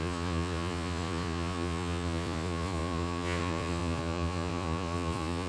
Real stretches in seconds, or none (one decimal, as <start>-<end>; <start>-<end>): none